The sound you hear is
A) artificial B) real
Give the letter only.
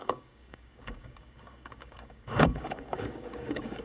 A